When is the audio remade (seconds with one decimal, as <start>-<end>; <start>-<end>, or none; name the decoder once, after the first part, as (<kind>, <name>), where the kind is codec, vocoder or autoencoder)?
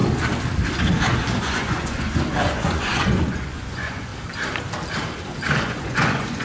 1.4-4.1 (vocoder, Vocos); 5.6-6.4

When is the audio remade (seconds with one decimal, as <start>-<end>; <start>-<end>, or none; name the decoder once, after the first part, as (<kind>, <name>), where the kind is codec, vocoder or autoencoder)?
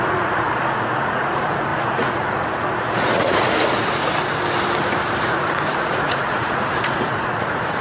0.0-4.0 (vocoder, Vocos); 5.2-7.8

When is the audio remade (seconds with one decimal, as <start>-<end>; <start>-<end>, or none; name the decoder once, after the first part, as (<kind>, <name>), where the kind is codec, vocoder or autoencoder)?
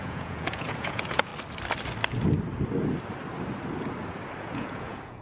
0.0-1.3 (vocoder, Vocos); 4.4-5.2